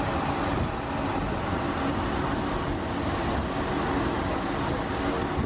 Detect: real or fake real